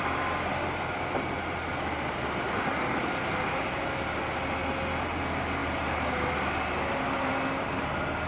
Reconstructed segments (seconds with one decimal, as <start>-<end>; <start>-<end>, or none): 5.6-6.3